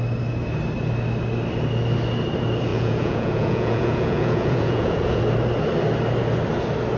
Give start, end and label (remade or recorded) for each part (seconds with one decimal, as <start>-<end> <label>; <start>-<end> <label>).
0.0-2.7 recorded; 2.7-5.2 remade; 5.2-7.0 recorded